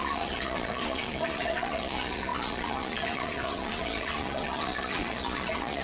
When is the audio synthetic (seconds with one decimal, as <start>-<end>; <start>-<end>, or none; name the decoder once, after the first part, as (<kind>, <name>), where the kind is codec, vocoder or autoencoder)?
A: 0.0-5.8 (vocoder, Vocos)